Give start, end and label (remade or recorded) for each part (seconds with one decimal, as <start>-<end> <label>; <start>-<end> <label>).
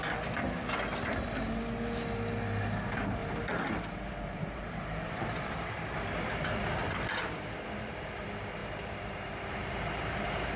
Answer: 0.0-3.2 recorded; 3.2-5.5 remade; 5.5-7.2 recorded; 7.2-8.2 remade; 8.2-8.6 recorded; 8.6-10.6 remade